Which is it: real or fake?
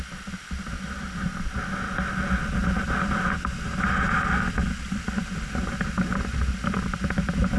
real